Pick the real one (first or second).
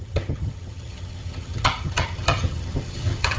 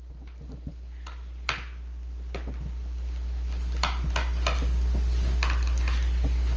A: second